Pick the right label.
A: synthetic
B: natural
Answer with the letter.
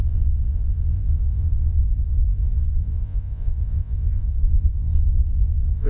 A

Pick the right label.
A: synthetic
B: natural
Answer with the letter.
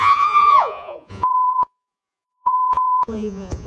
A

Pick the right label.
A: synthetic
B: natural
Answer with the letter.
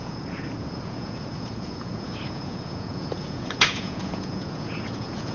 A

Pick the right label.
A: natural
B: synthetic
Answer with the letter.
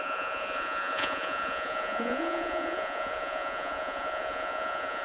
B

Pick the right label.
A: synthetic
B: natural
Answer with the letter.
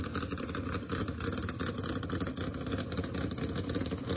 B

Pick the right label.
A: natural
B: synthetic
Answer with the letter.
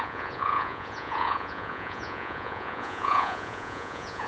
B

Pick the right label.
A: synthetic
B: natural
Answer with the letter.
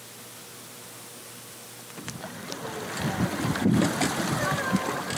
B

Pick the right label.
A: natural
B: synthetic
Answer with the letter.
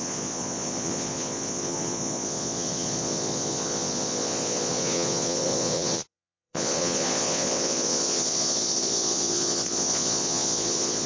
B